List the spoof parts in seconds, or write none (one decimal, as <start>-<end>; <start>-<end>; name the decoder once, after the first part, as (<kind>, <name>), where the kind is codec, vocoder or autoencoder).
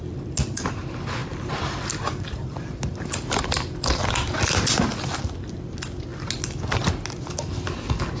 none